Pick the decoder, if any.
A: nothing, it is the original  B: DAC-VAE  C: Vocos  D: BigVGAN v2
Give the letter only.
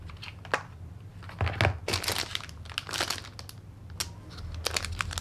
A